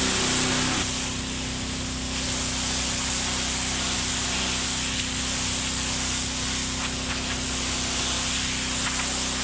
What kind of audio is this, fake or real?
real